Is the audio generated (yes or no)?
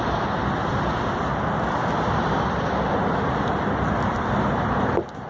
yes